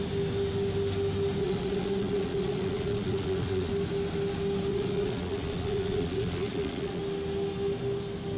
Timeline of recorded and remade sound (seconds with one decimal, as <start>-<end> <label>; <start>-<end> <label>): 0.0-1.4 recorded; 1.4-3.7 remade; 3.7-4.7 recorded; 4.7-7.0 remade; 7.0-8.4 recorded